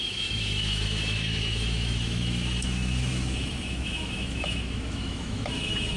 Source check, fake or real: fake